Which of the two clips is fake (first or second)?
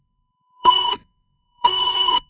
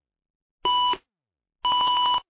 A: first